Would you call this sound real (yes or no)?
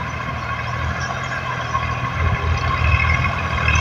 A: yes